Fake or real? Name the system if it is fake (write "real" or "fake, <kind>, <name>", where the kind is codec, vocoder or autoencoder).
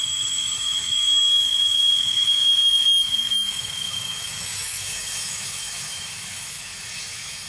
fake, autoencoder, DAC-VAE